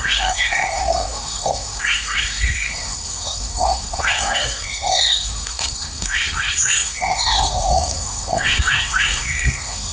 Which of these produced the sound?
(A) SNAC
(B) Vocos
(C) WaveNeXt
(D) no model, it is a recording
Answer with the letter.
A